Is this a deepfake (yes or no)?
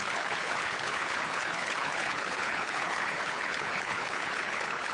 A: yes